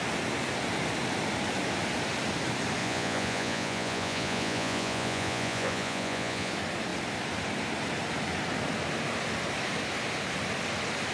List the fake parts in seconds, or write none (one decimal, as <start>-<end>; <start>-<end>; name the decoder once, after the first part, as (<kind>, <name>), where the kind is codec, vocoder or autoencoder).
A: 2.8-6.5 (vocoder, Vocos)